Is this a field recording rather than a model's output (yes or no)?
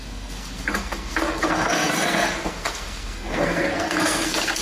no